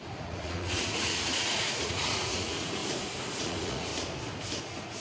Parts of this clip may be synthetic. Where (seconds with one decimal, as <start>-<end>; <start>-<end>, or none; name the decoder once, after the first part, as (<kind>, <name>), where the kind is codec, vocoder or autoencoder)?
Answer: 0.0-2.8 (vocoder, Vocos); 3.3-3.9; 4.6-5.0